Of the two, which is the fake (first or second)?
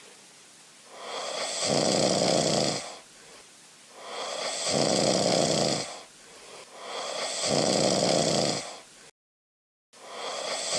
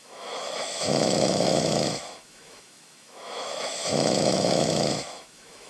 second